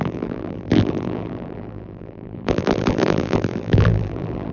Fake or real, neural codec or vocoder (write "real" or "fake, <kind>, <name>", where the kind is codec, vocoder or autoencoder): fake, vocoder, BigVGAN v2